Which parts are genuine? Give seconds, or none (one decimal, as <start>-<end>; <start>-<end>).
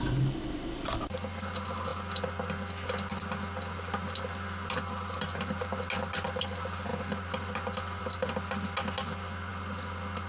0.0-10.3